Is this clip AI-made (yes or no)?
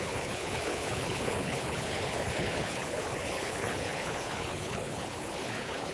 yes